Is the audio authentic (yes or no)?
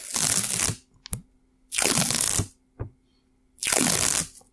yes